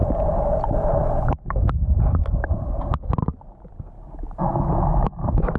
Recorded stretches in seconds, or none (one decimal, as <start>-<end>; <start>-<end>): 1.3-2.3; 2.9-5.6